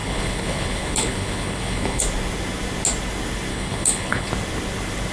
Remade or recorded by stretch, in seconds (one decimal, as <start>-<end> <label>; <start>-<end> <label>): 0.0-2.0 remade; 2.0-3.5 recorded; 3.5-4.3 remade; 4.3-5.1 recorded